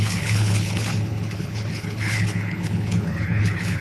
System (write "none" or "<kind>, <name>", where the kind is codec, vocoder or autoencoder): codec, HILCodec